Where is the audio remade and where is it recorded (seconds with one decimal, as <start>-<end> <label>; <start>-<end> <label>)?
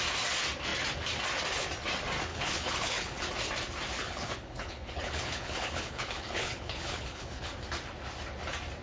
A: 0.0-2.3 recorded; 2.3-3.2 remade; 3.2-4.0 recorded; 4.0-7.5 remade; 7.5-8.8 recorded